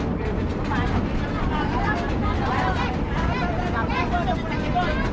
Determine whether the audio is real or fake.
real